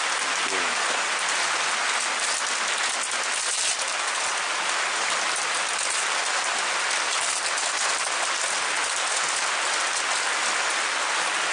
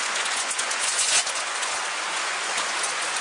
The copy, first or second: second